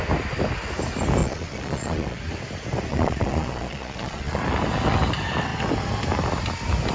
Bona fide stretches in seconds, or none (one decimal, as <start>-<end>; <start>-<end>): 0.0-1.2; 2.2-2.9; 4.4-6.9